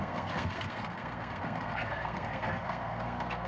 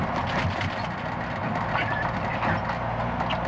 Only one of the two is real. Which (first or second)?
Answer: second